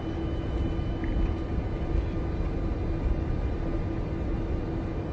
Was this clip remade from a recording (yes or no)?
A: no